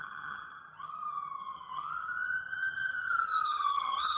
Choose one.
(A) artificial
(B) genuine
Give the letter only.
A